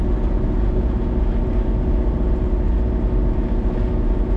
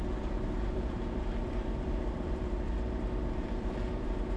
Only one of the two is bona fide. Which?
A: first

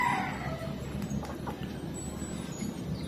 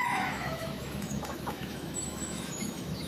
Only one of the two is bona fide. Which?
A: first